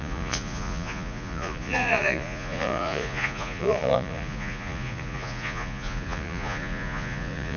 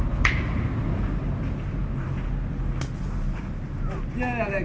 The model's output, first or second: first